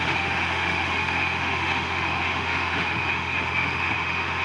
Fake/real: fake